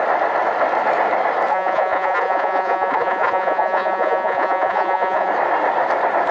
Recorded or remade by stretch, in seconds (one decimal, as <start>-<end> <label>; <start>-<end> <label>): 0.0-1.5 recorded; 1.5-5.3 remade; 5.3-6.3 recorded